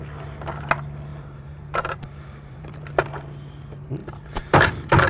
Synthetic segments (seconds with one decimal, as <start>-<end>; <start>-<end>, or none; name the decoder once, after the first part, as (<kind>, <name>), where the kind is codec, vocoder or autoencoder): 1.1-2.9 (vocoder, BigVGAN v2); 4.0-5.1